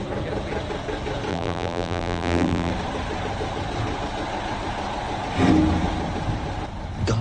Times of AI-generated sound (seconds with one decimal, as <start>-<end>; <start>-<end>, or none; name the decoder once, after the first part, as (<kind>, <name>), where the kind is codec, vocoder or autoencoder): 1.3-2.7 (vocoder, BigVGAN v2)